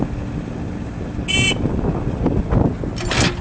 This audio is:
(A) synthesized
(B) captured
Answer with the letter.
B